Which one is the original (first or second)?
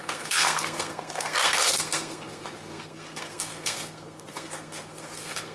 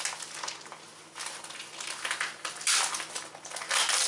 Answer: second